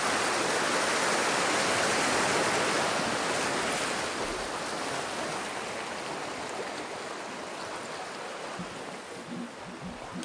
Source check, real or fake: real